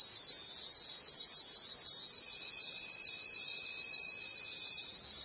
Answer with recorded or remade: recorded